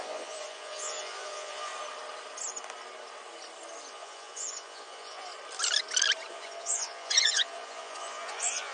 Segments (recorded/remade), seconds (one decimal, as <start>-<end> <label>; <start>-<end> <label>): 0.0-1.7 remade; 1.7-3.9 recorded; 3.9-5.3 remade; 5.3-6.3 recorded; 6.3-8.7 remade